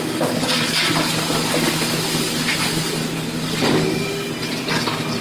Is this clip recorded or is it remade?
recorded